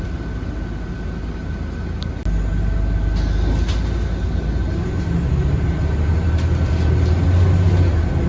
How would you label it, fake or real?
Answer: real